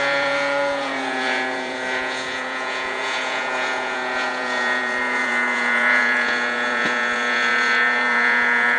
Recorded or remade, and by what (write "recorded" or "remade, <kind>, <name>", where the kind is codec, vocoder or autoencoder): remade, vocoder, Vocos